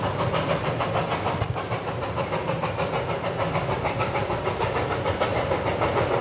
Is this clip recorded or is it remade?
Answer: recorded